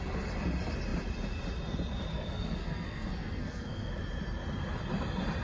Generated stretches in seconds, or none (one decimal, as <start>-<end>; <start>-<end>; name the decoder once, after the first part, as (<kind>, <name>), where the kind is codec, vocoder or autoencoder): 2.1-3.9 (codec, SNAC)